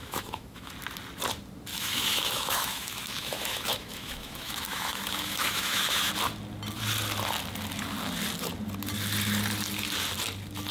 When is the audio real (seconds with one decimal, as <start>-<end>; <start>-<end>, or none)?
0.7-1.7; 6.1-10.7